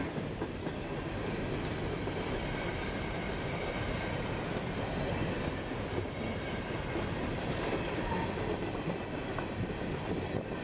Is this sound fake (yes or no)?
yes